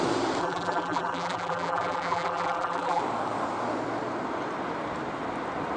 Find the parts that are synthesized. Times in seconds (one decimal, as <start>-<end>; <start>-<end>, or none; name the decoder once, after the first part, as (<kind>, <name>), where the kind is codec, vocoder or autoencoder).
0.4-3.0 (vocoder, BigVGAN v2)